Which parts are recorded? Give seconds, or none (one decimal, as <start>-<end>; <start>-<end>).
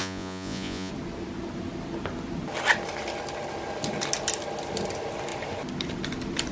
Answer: 0.9-6.5